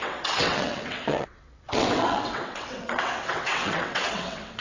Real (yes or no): no